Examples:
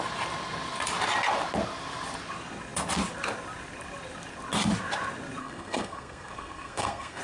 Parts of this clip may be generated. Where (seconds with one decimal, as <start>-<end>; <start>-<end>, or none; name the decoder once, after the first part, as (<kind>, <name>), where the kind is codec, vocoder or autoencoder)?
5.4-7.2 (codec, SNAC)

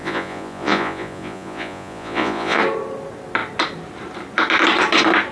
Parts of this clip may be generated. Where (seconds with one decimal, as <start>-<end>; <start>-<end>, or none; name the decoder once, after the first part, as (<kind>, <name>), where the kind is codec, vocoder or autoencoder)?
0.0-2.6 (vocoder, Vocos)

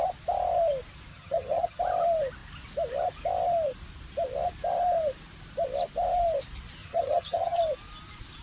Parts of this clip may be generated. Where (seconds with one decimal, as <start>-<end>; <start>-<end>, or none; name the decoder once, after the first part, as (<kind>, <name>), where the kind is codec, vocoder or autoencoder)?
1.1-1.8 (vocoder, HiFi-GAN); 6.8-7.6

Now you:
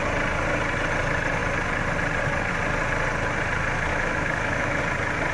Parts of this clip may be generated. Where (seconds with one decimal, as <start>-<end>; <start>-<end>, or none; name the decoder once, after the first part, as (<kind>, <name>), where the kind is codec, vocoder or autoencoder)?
3.9-4.8 (autoencoder, DAC-VAE)

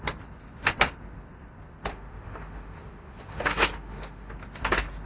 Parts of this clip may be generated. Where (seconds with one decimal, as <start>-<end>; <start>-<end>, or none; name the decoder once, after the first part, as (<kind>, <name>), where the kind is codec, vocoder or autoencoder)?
1.9-4.3 (autoencoder, DAC-VAE)